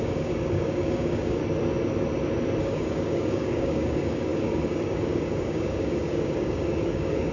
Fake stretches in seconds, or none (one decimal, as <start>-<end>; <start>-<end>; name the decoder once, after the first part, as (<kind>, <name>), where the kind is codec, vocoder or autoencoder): 0.0-1.4 (codec, DAC); 2.6-7.3